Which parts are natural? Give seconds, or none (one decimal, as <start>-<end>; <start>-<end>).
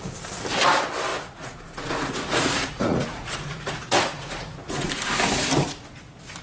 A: 0.0-1.1; 4.9-6.4